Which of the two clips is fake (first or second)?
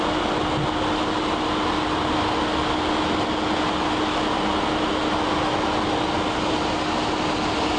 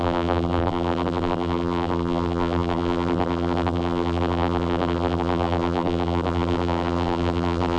second